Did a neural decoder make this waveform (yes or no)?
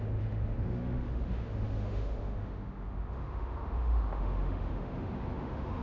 yes